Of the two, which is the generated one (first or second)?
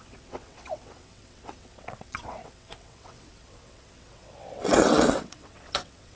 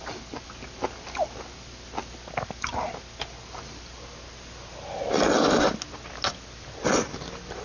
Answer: first